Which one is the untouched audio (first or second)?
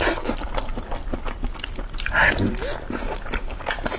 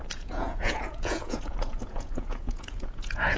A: first